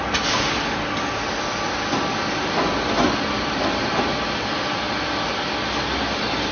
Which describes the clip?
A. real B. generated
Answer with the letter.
A